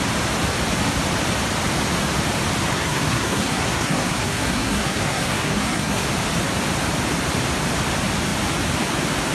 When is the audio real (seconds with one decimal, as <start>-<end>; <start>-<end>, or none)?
0.0-2.7; 6.1-9.3